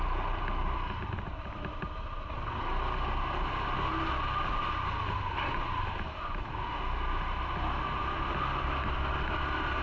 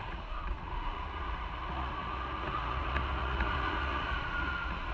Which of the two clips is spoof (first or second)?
second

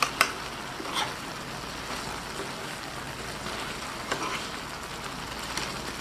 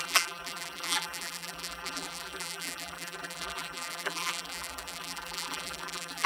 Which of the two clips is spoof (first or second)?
second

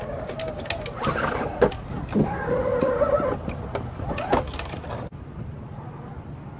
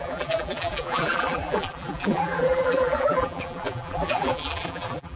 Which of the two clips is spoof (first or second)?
second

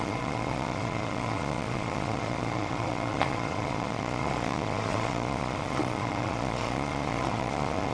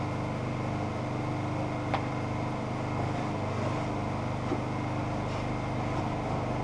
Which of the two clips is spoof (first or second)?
first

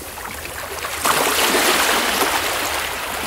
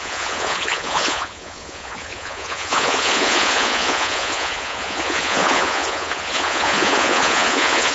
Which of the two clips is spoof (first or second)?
second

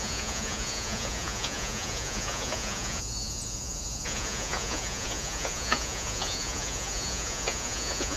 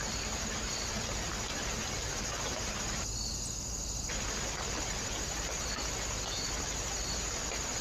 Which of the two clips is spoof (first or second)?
first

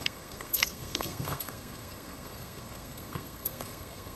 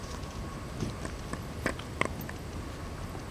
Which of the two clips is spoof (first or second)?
first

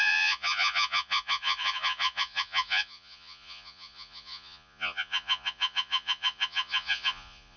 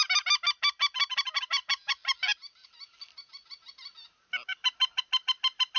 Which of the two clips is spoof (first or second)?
first